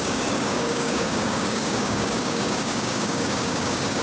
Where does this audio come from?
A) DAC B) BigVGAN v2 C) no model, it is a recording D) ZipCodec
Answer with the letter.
A